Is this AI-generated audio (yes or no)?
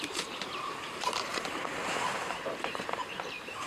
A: yes